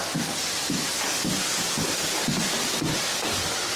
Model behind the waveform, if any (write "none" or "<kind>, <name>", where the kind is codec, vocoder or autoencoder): none